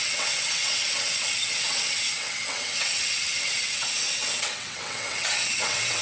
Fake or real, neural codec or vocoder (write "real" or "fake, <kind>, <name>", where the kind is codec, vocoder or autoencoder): fake, vocoder, WaveNeXt